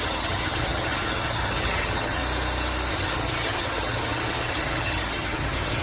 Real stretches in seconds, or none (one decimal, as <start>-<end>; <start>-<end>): 2.2-2.9